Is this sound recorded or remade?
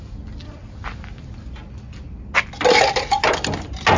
recorded